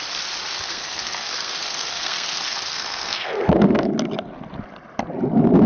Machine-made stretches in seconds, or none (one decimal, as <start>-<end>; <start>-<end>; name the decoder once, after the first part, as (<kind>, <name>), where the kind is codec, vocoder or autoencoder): 0.5-3.9 (codec, SNAC)